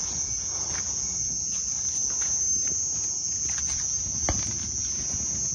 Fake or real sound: real